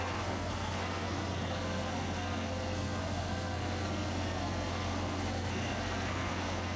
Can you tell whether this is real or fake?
fake